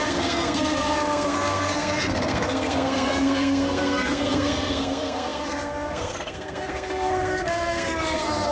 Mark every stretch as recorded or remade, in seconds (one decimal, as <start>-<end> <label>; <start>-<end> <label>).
0.0-8.5 remade